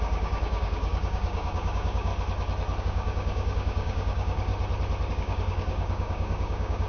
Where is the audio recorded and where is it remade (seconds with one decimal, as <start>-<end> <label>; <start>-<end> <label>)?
0.0-2.1 remade; 2.1-2.8 recorded; 2.8-4.5 remade; 4.5-5.1 recorded; 5.1-6.9 remade